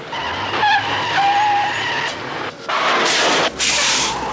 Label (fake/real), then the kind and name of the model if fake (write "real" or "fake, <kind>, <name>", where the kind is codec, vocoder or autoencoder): real